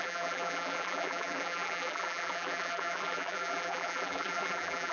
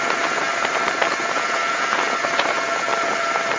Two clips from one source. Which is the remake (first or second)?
first